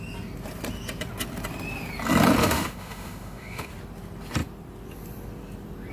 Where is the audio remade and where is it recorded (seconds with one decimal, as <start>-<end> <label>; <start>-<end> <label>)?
0.0-2.4 recorded; 2.4-3.7 remade; 3.7-5.9 recorded